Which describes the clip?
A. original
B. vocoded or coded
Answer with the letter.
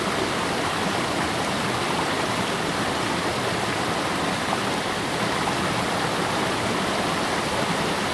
B